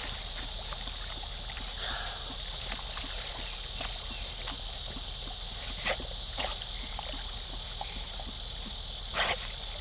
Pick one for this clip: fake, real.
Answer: real